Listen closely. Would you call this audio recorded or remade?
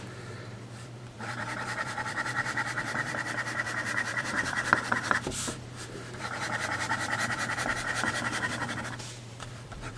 remade